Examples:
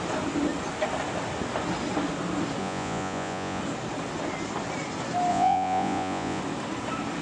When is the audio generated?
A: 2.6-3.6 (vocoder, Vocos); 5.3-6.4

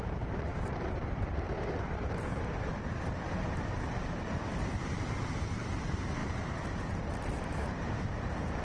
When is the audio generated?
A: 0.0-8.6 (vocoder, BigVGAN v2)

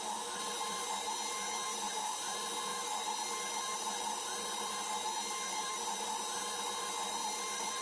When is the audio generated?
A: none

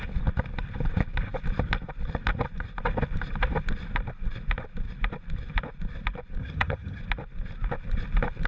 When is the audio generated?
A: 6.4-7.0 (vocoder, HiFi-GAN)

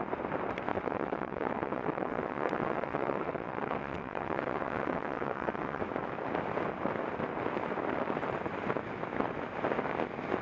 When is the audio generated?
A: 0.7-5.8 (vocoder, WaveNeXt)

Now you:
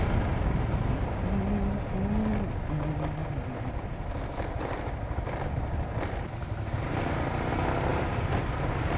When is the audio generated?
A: 3.2-7.5 (vocoder, BigVGAN v2); 7.9-9.0